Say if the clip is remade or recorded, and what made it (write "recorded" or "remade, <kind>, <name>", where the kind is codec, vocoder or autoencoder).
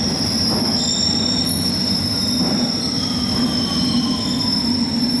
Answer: recorded